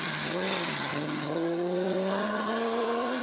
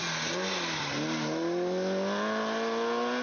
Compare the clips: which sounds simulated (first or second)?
first